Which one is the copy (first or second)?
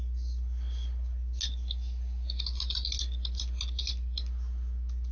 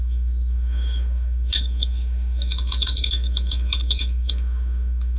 second